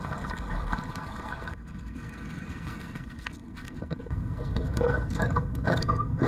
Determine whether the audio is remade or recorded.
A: remade